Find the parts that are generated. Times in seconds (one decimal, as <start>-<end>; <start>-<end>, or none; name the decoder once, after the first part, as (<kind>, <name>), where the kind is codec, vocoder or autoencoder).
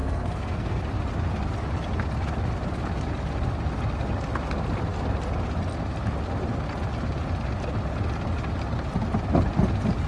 0.0-0.8 (codec, SNAC)